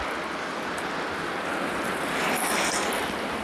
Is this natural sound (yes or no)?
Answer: yes